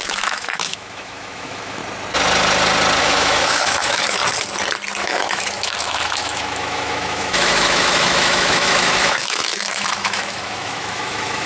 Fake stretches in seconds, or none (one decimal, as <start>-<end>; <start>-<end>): 0.0-1.8; 3.0-4.2; 5.0-11.5